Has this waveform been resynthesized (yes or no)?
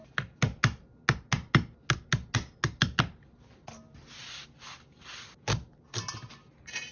no